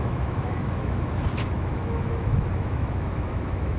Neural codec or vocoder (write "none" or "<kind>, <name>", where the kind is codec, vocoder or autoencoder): autoencoder, DAC-VAE